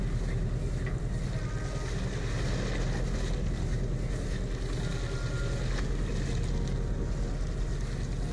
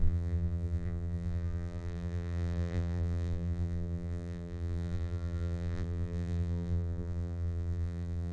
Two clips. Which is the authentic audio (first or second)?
first